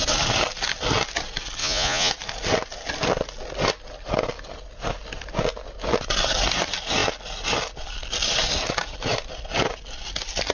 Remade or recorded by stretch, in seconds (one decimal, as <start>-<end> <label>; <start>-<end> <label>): 0.0-1.6 recorded; 1.6-2.1 remade; 2.1-10.5 recorded